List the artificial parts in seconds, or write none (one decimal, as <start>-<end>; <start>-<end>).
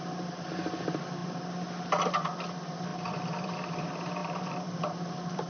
2.9-3.8; 4.2-5.5